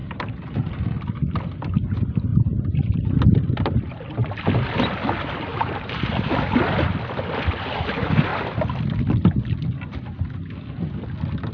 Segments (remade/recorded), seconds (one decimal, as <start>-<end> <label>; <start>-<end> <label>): 0.0-0.5 remade; 0.5-2.3 recorded; 2.3-3.1 remade; 3.1-5.5 recorded; 5.5-6.0 remade; 6.0-11.5 recorded